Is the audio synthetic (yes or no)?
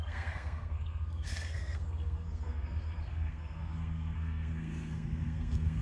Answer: yes